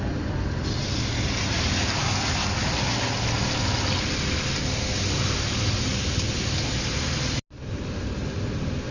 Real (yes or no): yes